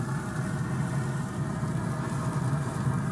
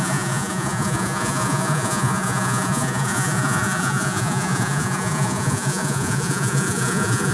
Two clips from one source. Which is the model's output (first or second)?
second